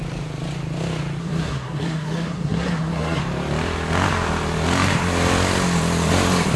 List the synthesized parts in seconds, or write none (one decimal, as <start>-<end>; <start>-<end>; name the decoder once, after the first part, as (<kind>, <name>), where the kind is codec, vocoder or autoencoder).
1.2-3.2 (codec, SNAC)